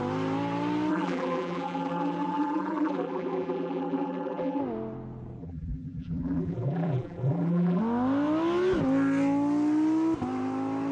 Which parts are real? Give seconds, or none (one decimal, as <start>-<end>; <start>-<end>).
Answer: 0.0-0.9; 4.6-5.4; 7.8-10.9